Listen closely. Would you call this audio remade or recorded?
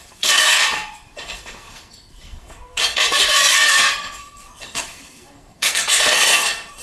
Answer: remade